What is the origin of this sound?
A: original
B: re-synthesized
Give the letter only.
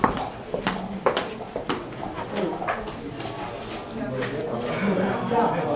A